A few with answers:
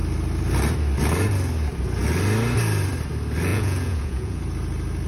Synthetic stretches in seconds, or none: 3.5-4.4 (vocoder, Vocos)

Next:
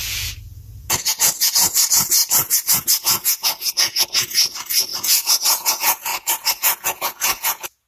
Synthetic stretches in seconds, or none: 0.0-7.9 (vocoder, Vocos)

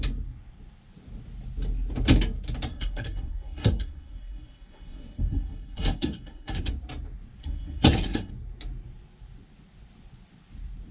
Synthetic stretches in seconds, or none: 2.7-6.7 (codec, SNAC); 7.4-8.3